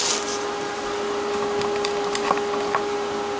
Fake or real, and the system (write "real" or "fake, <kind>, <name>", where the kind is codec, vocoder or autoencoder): real